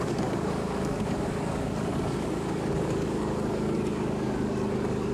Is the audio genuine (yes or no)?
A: no